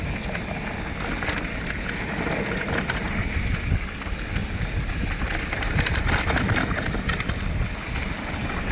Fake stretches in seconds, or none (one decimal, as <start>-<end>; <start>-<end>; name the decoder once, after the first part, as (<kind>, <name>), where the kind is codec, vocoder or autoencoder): 4.4-6.2 (vocoder, BigVGAN v2)